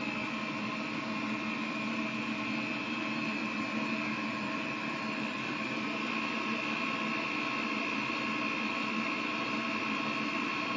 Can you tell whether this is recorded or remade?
remade